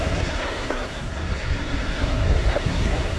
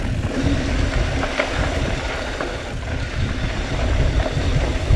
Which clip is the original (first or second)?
second